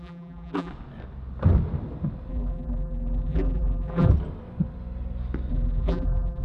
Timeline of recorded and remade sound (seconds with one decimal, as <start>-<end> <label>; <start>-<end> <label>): 0.0-0.7 remade; 0.7-2.3 recorded; 2.3-4.1 remade; 4.1-5.5 recorded; 5.5-6.4 remade